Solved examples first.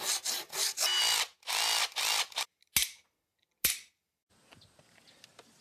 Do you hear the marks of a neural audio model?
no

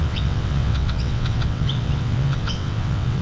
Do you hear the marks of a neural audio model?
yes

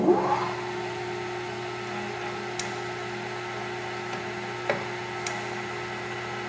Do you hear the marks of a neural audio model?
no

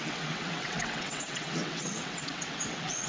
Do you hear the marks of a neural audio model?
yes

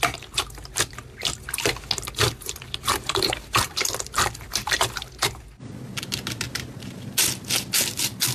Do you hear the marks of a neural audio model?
no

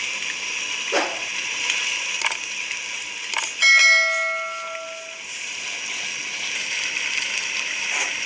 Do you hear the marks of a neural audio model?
no